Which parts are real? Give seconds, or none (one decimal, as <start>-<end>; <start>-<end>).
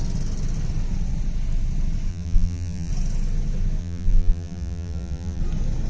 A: 0.0-2.1; 2.9-3.8; 5.4-5.9